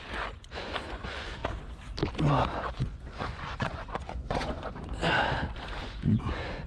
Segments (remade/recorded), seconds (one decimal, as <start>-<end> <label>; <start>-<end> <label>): 0.0-1.4 remade; 1.4-2.7 recorded; 2.7-5.0 remade; 5.0-5.8 recorded; 5.8-6.7 remade